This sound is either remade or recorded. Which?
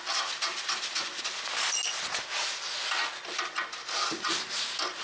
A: recorded